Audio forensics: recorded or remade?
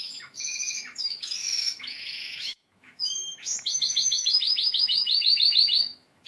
remade